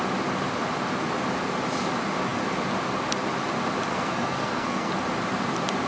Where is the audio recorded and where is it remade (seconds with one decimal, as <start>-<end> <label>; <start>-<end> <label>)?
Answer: 0.0-3.9 recorded; 3.9-4.9 remade; 4.9-5.9 recorded